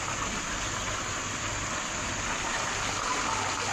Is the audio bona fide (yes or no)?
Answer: yes